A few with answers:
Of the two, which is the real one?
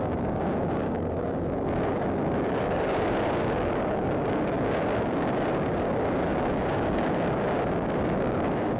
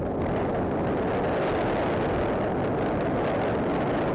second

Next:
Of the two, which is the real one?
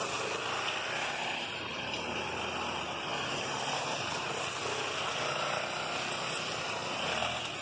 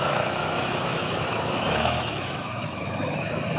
first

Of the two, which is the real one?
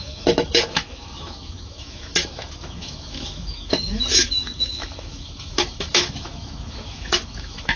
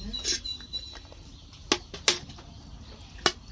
second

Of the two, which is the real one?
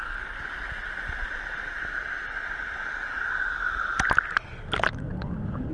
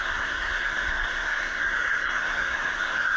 first